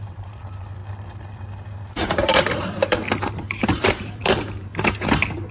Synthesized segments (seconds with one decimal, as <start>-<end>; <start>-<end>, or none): 0.0-0.8; 1.9-2.3; 3.4-4.7